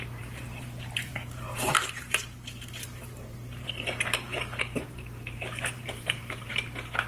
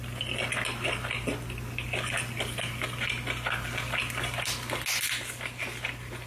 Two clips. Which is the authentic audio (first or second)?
second